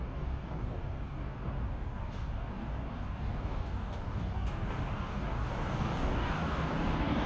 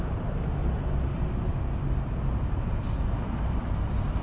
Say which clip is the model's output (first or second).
first